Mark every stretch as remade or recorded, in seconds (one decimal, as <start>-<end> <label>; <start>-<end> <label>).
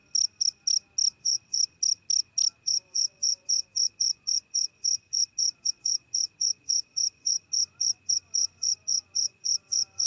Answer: 0.0-1.2 recorded; 1.2-1.6 remade; 1.6-2.6 recorded; 2.6-10.1 remade